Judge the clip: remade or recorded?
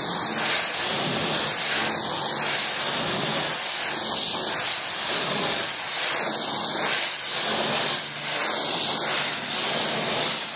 recorded